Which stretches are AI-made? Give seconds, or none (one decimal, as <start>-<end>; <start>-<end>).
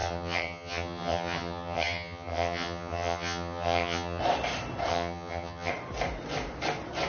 0.0-4.2; 4.9-5.7